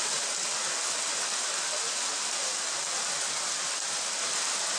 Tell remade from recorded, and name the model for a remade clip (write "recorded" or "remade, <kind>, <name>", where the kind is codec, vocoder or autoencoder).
recorded